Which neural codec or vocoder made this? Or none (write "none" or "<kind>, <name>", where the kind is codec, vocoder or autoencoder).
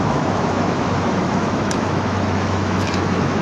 autoencoder, DAC-VAE